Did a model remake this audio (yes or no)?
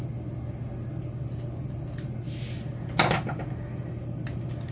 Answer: no